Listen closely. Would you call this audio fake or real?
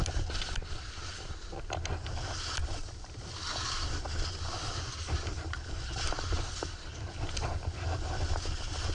real